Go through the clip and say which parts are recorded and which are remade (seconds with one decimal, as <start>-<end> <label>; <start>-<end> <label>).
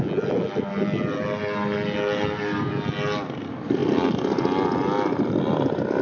0.0-6.0 recorded